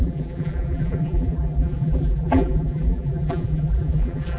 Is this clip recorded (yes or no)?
no